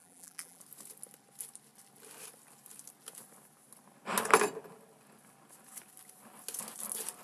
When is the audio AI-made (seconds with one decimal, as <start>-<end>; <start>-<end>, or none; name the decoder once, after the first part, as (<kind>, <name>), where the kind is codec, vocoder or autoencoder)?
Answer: 0.0-0.6 (vocoder, BigVGAN v2)